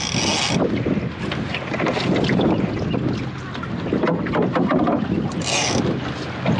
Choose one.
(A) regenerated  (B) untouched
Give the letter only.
B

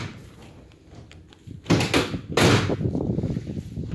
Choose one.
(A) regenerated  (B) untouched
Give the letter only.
B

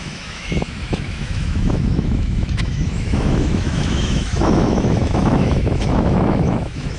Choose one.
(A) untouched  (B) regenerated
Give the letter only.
B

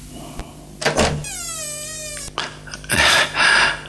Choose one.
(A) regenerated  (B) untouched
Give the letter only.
B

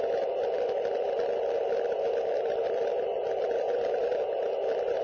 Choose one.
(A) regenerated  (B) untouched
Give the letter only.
B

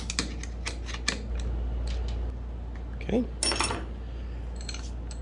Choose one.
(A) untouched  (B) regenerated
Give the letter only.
A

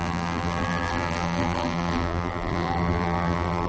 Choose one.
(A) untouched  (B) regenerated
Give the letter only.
B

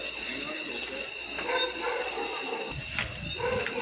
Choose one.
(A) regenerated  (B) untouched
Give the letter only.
B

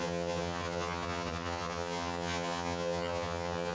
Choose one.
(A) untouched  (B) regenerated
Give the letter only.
B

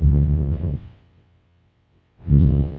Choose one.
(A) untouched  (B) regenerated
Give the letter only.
B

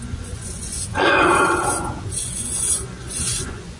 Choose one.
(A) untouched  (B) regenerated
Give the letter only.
B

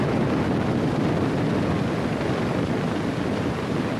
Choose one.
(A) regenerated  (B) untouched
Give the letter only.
B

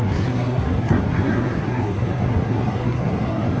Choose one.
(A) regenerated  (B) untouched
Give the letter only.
A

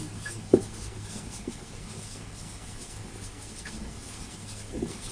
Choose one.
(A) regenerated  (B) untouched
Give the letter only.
A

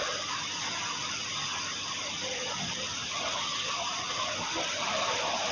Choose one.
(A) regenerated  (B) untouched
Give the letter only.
B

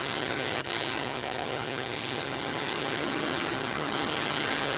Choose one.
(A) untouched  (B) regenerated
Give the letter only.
B